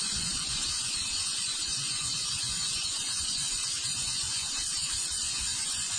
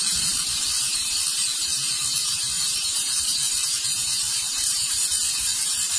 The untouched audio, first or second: second